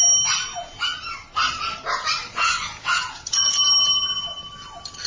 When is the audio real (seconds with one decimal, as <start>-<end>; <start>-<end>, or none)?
0.0-2.3; 3.5-5.1